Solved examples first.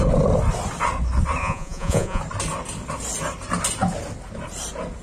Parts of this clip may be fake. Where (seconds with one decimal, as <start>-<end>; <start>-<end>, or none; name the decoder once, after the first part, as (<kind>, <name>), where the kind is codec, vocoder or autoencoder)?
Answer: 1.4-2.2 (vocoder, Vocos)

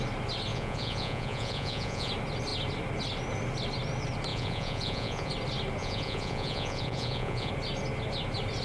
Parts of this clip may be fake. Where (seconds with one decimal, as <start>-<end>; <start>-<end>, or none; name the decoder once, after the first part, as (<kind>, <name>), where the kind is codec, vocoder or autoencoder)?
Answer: 0.5-2.1 (vocoder, Vocos); 4.3-5.3; 5.8-7.5

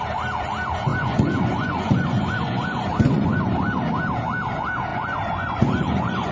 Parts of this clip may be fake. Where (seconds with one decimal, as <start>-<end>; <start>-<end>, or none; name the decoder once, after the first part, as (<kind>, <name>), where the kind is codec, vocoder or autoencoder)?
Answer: 0.9-3.4 (vocoder, Vocos); 4.9-6.3